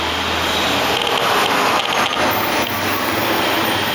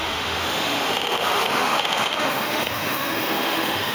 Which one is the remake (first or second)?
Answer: second